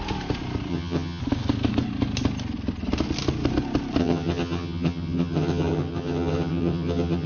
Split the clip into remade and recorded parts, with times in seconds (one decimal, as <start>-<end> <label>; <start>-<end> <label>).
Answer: 0.0-0.7 recorded; 0.7-1.2 remade; 1.2-4.0 recorded; 4.0-7.3 remade